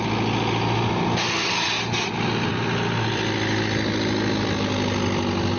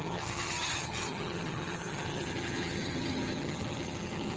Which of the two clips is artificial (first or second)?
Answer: second